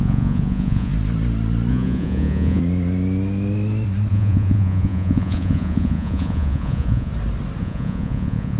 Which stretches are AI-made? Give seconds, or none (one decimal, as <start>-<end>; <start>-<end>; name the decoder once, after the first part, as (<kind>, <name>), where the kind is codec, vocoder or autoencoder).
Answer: 0.0-0.9 (vocoder, Vocos); 1.7-2.6; 4.1-7.1; 7.6-8.6